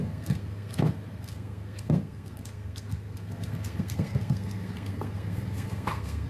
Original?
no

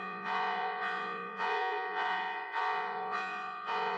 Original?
no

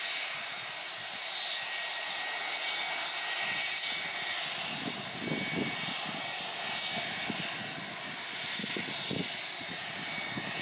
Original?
yes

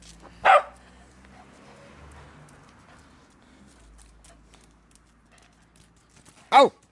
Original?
yes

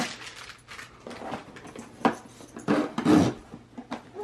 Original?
yes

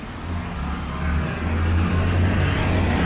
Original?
yes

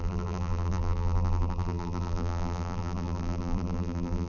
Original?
no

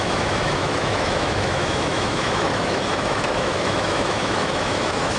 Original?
no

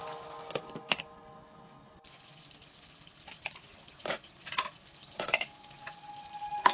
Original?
yes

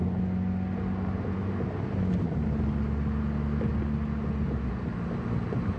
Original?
yes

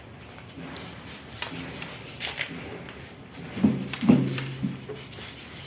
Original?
no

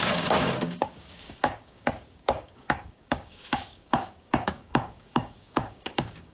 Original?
no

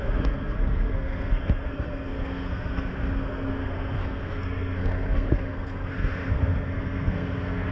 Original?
no